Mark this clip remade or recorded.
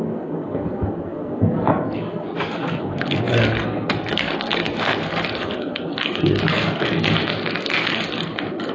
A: remade